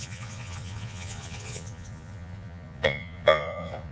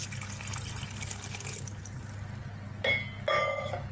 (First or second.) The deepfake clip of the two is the first